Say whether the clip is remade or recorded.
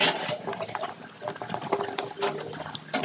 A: recorded